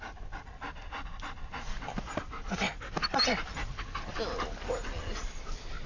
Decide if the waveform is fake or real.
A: real